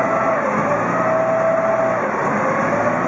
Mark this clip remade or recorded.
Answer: recorded